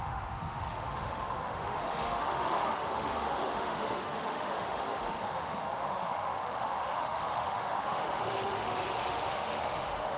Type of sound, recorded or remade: remade